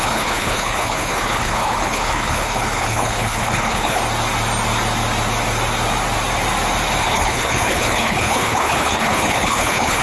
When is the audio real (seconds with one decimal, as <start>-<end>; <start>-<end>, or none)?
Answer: 4.0-7.0